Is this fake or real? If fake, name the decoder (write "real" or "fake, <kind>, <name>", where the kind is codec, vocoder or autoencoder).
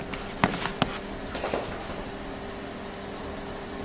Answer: real